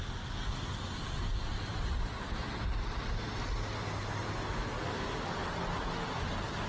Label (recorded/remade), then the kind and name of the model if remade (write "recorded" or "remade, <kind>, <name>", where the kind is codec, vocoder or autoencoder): recorded